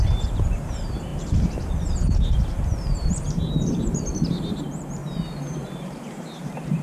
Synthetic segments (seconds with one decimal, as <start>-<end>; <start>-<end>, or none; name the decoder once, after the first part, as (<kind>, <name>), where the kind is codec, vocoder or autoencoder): 0.0-5.0 (vocoder, BigVGAN v2); 5.8-6.8